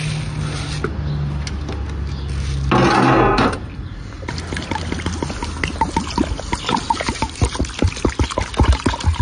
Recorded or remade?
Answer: recorded